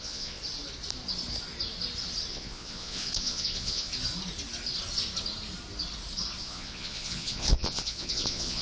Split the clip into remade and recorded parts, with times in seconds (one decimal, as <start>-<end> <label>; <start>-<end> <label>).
0.0-0.4 remade; 0.4-2.3 recorded; 2.3-3.9 remade; 3.9-6.4 recorded; 6.4-8.6 remade

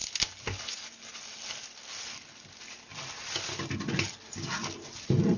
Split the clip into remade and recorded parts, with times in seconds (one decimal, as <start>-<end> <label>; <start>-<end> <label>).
0.0-5.4 recorded

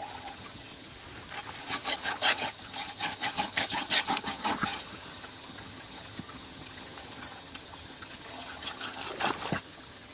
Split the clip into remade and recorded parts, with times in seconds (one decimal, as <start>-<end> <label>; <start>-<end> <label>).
0.0-0.9 remade; 0.9-1.6 recorded; 1.6-9.0 remade; 9.0-9.5 recorded; 9.5-10.1 remade